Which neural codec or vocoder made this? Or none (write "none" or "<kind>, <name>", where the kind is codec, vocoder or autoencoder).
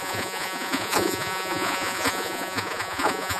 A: vocoder, Vocos